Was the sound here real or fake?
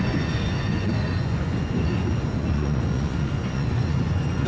fake